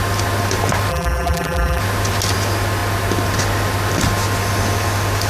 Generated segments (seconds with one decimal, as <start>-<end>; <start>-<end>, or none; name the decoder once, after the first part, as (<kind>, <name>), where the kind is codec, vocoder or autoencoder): 0.9-1.8 (vocoder, BigVGAN v2)

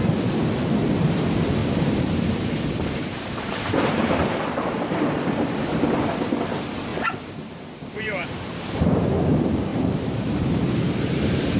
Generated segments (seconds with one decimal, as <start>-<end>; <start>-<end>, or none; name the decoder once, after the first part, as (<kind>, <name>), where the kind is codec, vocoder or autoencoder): 1.6-5.7 (vocoder, BigVGAN v2); 6.9-9.0; 9.7-11.6